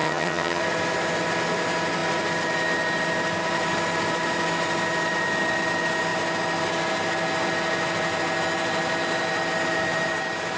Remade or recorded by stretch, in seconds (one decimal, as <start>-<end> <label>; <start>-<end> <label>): 0.0-0.6 remade; 0.6-10.6 recorded